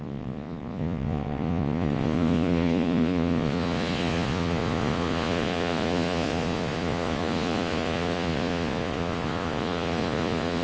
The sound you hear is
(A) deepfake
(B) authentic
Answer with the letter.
A